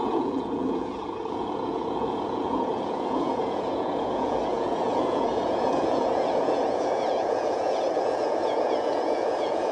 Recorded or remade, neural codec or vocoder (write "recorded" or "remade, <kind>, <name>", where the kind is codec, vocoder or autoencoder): remade, vocoder, Vocos